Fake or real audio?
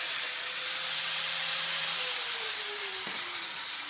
fake